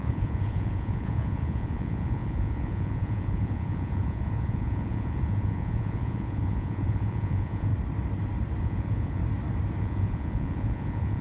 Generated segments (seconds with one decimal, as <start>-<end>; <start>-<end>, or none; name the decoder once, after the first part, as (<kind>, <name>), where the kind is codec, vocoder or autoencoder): 0.0-7.7 (vocoder, Vocos); 8.6-9.2; 9.8-11.2